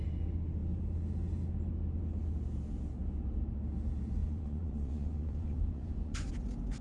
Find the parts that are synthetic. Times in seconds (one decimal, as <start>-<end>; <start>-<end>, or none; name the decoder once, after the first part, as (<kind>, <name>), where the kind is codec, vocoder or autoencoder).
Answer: 4.2-6.3 (vocoder, Vocos)